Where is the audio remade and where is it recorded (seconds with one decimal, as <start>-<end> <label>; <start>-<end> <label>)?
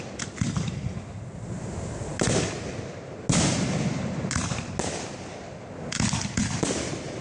0.0-7.2 recorded